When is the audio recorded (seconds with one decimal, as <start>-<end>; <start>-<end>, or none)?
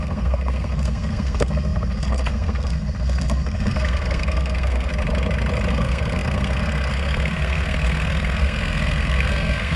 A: 4.9-5.7